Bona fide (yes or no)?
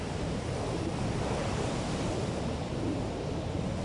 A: yes